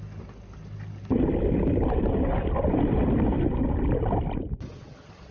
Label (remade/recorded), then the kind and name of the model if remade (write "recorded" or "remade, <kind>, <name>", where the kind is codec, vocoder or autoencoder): recorded